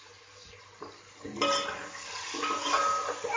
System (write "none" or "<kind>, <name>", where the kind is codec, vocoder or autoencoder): none